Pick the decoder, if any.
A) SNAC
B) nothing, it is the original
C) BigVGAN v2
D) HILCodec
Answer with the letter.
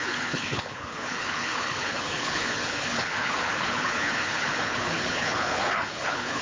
D